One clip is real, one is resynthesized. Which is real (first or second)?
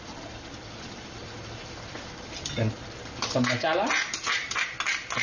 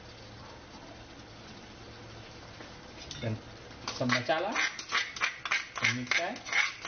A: second